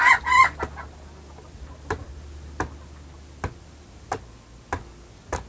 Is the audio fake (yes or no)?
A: no